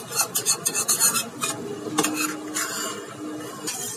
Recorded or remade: recorded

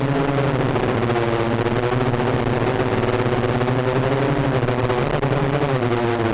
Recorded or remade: recorded